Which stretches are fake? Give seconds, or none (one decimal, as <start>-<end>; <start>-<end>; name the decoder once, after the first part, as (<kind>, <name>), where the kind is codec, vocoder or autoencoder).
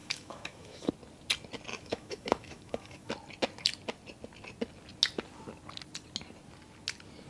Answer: 0.0-0.9 (autoencoder, DAC-VAE); 1.7-3.1